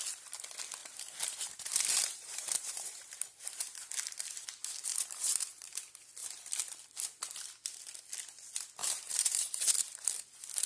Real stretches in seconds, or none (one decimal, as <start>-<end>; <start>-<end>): 0.0-0.8; 3.2-4.9; 5.8-8.8; 9.4-10.7